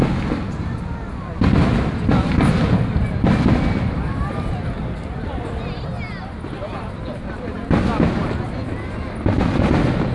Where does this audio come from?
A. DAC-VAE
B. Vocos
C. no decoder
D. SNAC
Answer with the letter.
C